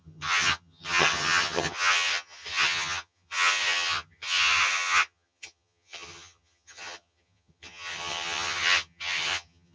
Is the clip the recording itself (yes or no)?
no